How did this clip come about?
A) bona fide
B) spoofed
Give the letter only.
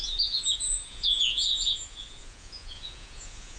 B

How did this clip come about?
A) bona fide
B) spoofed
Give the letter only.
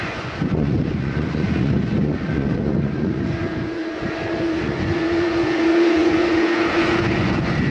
B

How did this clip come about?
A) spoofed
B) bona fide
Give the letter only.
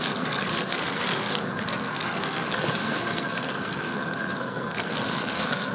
A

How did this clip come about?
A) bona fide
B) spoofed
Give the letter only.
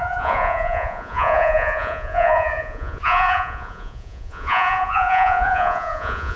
B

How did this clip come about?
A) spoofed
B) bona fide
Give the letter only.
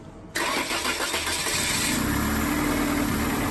B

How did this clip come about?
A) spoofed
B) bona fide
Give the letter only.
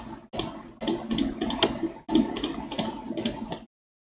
B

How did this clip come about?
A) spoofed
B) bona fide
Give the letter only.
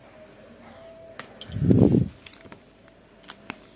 B